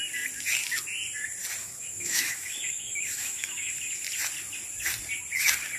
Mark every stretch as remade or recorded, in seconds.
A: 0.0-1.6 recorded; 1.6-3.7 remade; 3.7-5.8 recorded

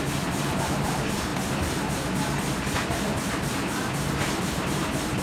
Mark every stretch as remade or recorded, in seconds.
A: 0.0-1.3 remade; 1.3-4.4 recorded; 4.4-5.2 remade

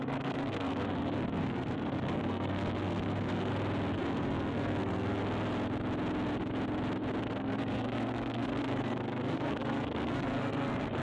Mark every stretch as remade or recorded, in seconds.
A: 0.0-3.5 remade; 3.5-4.0 recorded; 4.0-5.2 remade; 5.2-7.2 recorded; 7.2-11.0 remade

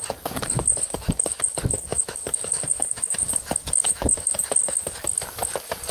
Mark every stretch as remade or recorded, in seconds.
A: 0.0-5.9 remade

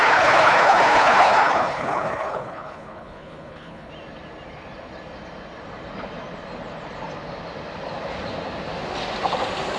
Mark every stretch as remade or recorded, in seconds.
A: 0.0-3.9 remade; 3.9-9.8 recorded